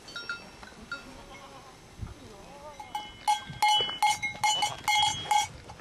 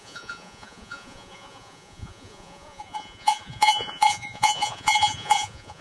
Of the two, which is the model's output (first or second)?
second